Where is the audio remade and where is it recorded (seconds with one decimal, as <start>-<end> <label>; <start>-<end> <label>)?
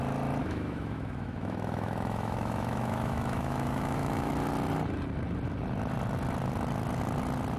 0.0-0.4 recorded; 0.4-4.3 remade; 4.3-7.6 recorded